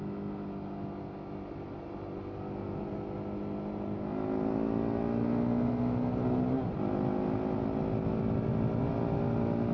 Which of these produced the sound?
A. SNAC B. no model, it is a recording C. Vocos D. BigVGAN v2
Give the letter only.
B